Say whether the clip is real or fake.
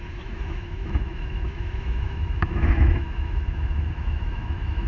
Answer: fake